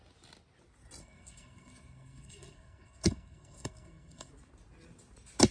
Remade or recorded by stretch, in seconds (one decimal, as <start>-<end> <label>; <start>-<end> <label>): 0.0-1.0 recorded; 1.0-4.3 remade; 4.3-5.5 recorded